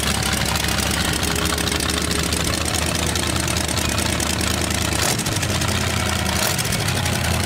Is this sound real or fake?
real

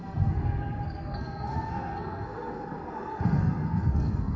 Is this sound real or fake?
fake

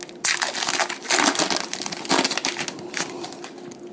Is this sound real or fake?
real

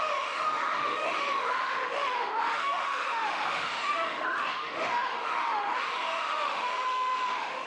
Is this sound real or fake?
fake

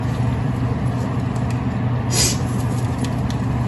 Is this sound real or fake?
real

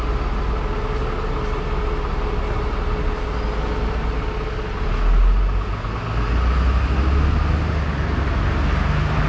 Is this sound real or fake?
real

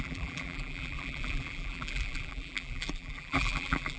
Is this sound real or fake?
fake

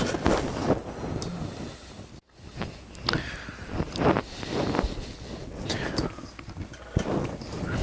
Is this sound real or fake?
real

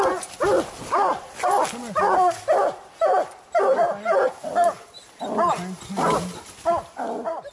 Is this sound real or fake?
real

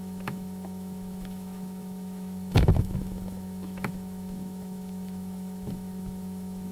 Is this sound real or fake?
fake